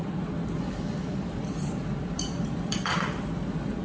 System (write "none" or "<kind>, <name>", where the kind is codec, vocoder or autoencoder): vocoder, BigVGAN v2